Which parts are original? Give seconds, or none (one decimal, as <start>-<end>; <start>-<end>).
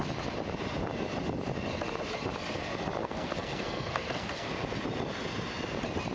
0.0-3.0; 4.5-6.1